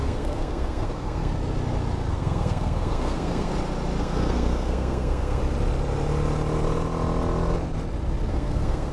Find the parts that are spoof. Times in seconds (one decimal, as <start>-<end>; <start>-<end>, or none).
0.0-1.3; 2.1-3.5; 4.0-5.4; 8.3-8.9

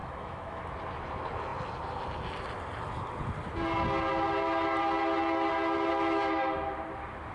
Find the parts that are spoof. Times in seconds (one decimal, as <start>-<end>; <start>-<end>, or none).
0.0-0.6